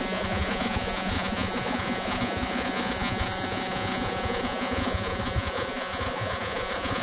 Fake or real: fake